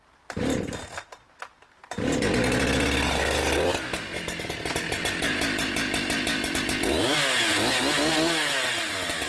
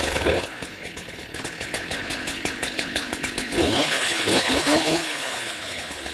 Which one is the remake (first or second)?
second